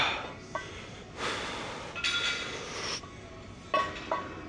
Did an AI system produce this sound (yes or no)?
no